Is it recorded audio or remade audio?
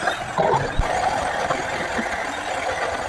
recorded